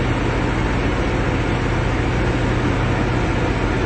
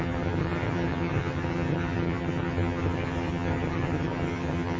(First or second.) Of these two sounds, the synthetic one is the second